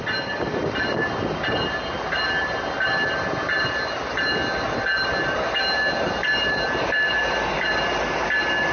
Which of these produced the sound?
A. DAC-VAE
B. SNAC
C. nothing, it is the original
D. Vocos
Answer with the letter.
C